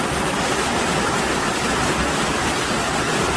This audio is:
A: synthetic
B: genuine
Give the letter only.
B